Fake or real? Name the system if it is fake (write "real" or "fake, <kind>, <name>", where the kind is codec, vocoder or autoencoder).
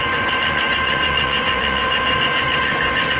fake, vocoder, Vocos